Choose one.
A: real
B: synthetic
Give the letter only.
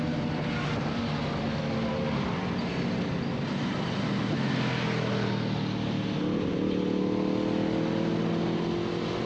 A